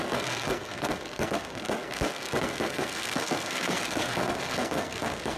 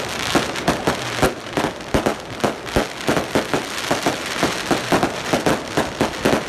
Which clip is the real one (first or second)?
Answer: second